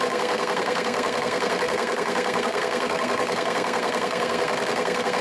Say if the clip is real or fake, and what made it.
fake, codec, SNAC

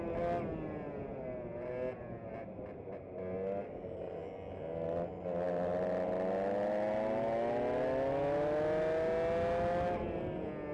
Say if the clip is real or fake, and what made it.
real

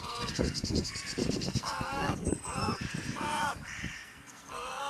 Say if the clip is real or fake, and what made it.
fake, codec, SNAC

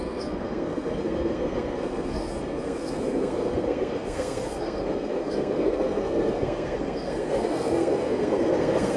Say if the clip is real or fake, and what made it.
fake, codec, SNAC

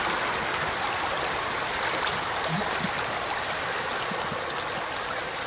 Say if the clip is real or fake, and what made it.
real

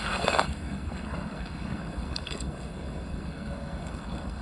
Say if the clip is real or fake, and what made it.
fake, codec, SNAC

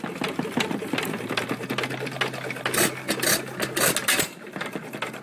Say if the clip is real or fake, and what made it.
real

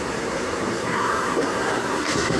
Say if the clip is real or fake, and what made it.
fake, codec, SNAC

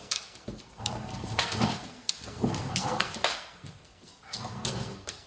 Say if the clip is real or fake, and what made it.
fake, codec, SNAC